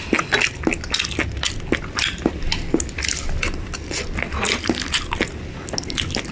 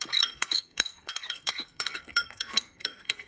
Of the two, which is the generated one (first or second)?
second